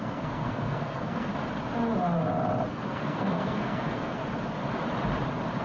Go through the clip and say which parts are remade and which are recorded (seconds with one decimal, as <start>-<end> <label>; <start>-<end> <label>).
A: 0.0-1.3 remade; 1.3-2.7 recorded; 2.7-4.2 remade; 4.2-5.6 recorded